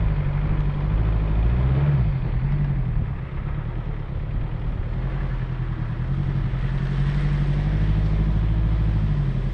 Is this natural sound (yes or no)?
yes